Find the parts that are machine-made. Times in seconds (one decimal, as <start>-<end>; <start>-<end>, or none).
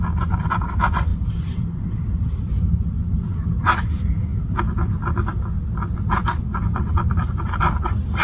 none